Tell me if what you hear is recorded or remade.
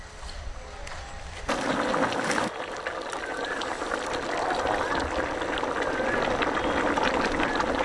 recorded